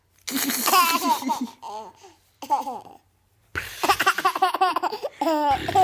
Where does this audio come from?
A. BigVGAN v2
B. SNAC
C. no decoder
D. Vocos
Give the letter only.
C